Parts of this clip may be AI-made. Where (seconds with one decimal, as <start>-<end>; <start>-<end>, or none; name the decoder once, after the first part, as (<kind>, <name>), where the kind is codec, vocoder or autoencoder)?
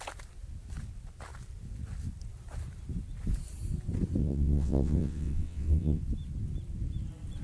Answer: 4.2-6.0 (vocoder, WaveNeXt)